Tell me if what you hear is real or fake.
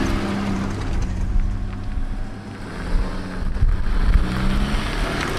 real